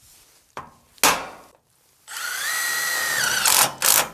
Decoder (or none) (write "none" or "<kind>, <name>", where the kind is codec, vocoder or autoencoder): none